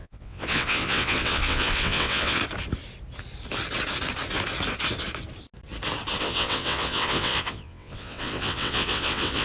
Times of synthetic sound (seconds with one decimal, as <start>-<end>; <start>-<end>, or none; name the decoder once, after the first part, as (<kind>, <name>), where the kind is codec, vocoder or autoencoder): 0.0-2.4 (vocoder, WaveNeXt); 6.2-9.4